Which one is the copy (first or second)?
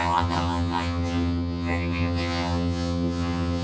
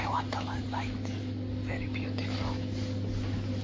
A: first